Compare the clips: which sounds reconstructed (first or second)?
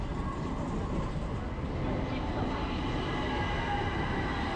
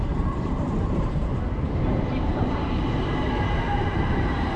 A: second